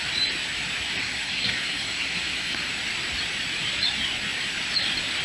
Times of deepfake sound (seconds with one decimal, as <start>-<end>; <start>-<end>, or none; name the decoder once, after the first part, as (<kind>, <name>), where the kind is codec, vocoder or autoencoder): 1.0-2.7 (codec, SNAC)